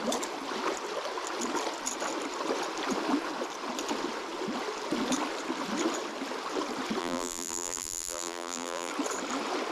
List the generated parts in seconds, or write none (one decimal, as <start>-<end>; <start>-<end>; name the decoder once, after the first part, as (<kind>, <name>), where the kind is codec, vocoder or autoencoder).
7.0-8.9 (vocoder, BigVGAN v2)